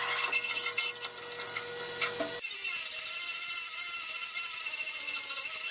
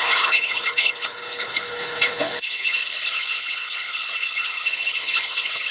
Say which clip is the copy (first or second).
second